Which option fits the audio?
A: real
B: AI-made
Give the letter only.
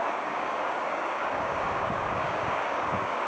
B